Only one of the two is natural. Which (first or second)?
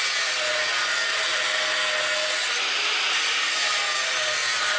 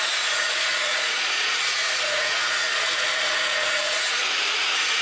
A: first